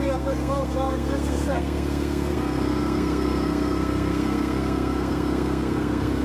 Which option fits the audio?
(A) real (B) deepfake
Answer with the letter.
B